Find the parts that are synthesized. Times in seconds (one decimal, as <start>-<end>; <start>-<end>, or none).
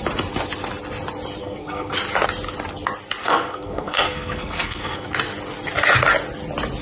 1.4-1.9; 3.2-5.1